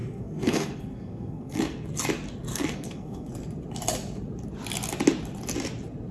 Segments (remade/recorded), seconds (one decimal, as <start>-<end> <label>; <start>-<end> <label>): 0.0-1.9 remade; 1.9-2.5 recorded; 2.5-3.3 remade; 3.3-6.1 recorded